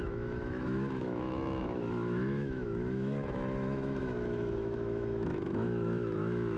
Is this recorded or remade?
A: remade